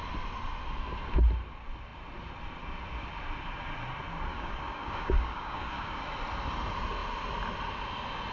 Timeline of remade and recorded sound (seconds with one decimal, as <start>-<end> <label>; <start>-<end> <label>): 0.0-4.3 recorded; 4.3-6.0 remade; 6.0-8.3 recorded